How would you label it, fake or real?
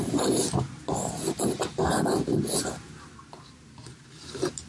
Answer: real